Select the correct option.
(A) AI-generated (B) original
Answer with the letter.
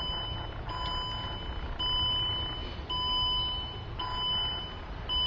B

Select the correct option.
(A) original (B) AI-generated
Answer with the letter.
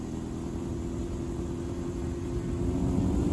A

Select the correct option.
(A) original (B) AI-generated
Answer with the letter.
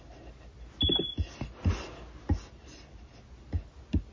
A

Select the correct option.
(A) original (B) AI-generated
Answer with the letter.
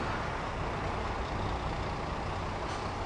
A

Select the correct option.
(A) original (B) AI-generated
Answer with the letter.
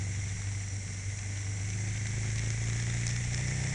A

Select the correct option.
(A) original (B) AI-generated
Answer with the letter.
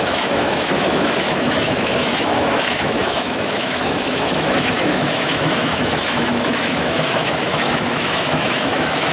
B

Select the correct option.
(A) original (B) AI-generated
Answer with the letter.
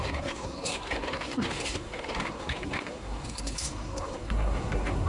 B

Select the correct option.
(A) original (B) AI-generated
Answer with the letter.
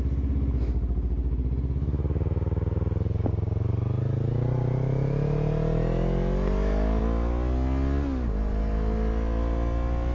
A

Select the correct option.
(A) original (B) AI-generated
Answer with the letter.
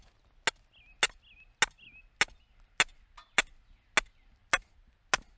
A